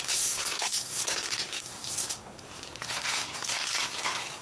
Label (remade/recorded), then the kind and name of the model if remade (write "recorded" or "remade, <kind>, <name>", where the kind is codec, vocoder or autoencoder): remade, codec, SNAC